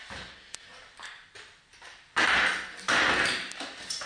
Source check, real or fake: real